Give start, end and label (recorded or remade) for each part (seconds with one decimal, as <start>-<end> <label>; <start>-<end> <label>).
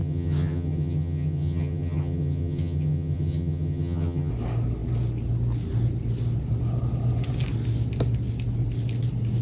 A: 0.0-4.3 remade; 4.3-9.4 recorded